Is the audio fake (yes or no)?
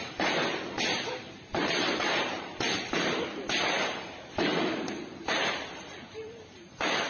yes